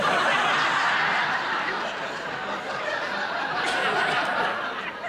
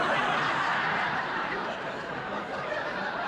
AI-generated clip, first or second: second